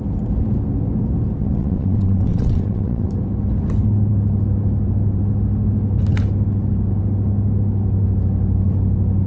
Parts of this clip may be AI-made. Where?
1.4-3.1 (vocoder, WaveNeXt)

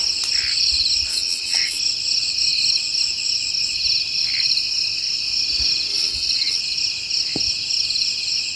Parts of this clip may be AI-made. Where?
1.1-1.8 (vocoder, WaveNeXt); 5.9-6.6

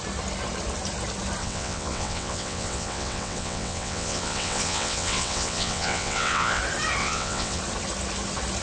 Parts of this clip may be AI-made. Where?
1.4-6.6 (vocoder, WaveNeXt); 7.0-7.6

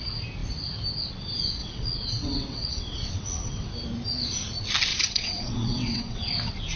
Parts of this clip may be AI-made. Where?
1.6-3.7 (vocoder, WaveNeXt); 4.9-6.3

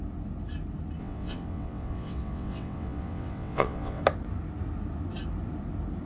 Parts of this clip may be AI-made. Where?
1.0-4.0 (vocoder, WaveNeXt)

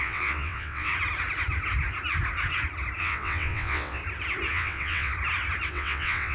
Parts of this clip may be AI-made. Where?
0.0-0.9 (vocoder, WaveNeXt); 3.0-4.0; 4.5-5.1; 5.7-6.3

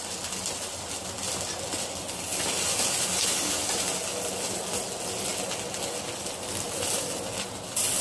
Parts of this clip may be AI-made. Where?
none

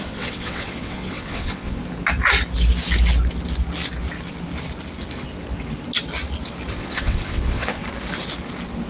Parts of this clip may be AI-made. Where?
0.0-1.8 (vocoder, WaveNeXt); 6.7-7.8